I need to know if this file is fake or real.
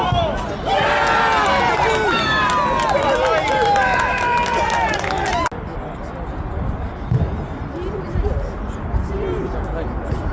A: real